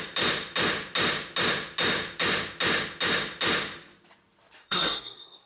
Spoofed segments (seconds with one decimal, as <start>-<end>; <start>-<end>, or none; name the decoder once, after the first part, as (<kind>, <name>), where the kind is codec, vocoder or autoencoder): 4.6-5.5 (codec, SNAC)